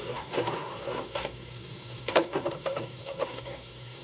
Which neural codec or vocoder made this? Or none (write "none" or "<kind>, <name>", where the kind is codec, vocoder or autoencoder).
codec, SNAC